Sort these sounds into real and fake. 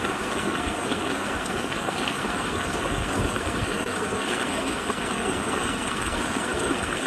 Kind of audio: fake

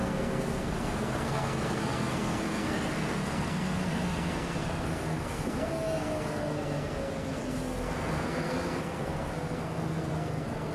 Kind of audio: fake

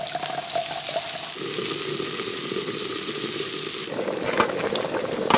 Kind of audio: real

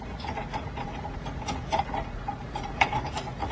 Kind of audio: fake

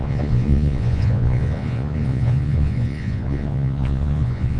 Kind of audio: fake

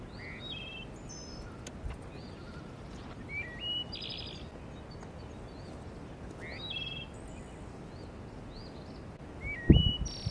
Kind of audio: real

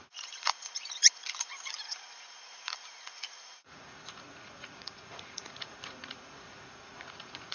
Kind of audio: fake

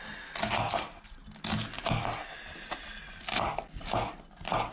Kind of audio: real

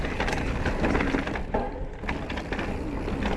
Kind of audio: real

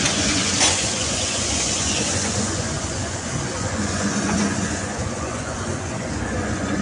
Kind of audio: fake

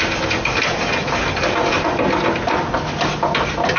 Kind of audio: real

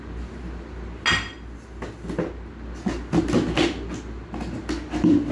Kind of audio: real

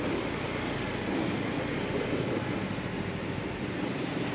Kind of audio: real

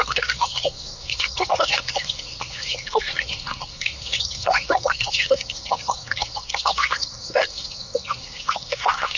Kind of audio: fake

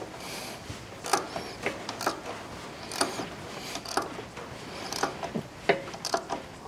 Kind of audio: real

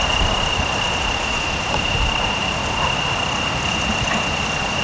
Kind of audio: real